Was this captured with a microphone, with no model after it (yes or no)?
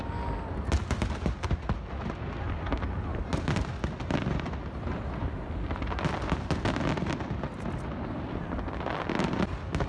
yes